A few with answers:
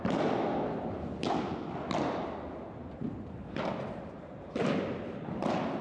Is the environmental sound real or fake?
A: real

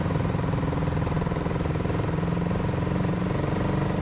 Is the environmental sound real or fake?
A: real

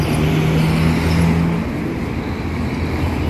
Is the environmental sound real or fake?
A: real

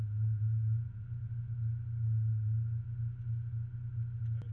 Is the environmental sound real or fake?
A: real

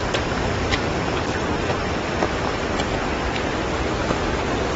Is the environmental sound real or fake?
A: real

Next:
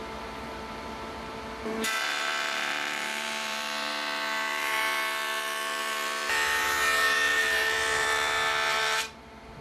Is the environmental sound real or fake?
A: fake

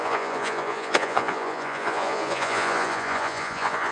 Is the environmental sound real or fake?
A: fake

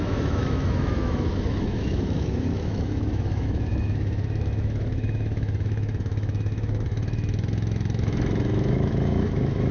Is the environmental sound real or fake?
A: fake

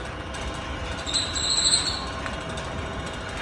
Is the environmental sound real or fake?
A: real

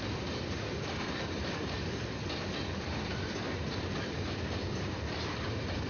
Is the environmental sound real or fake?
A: fake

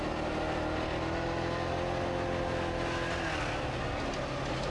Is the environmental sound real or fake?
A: real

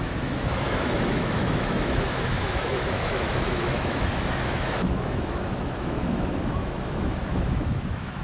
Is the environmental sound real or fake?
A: fake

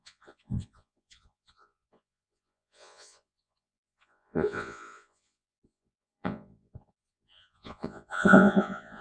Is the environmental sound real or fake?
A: fake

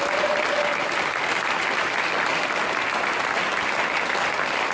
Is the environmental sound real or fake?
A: real